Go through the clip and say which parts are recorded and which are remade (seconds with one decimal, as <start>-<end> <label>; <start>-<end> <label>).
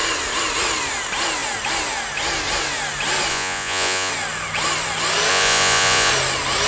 0.0-3.3 recorded; 3.3-4.1 remade; 4.1-5.3 recorded; 5.3-6.1 remade; 6.1-6.7 recorded